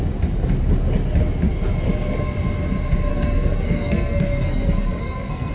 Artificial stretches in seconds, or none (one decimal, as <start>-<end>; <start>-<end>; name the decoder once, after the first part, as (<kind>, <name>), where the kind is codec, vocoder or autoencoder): 3.1-5.5 (codec, SNAC)